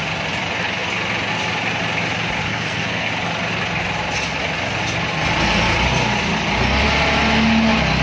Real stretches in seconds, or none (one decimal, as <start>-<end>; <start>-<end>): 0.0-2.5; 3.1-8.0

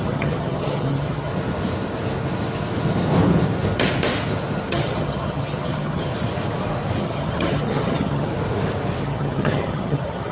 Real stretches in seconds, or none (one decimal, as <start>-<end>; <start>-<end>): 1.3-4.7; 6.1-7.0; 8.3-9.0